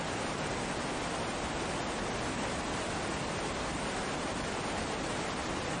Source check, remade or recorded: recorded